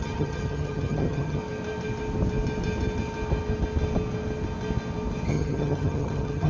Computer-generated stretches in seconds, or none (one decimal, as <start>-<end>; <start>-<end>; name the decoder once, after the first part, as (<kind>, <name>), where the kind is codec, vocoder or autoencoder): 0.0-1.4 (vocoder, HiFi-GAN); 5.3-6.5